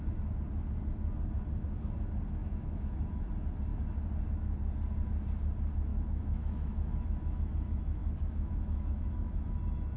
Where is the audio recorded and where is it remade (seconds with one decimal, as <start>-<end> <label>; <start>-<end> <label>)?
0.0-2.4 recorded; 2.4-3.3 remade; 3.3-5.9 recorded; 5.9-7.4 remade; 7.4-8.0 recorded; 8.0-9.5 remade; 9.5-10.0 recorded